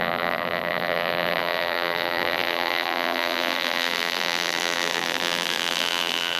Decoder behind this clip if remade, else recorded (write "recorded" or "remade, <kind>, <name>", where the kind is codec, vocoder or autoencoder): remade, vocoder, BigVGAN v2